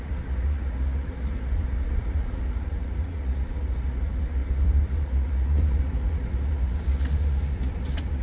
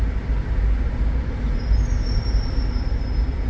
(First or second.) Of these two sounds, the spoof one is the first